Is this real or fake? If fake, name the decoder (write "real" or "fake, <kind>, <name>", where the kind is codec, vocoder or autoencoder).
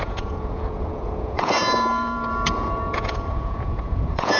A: fake, vocoder, Vocos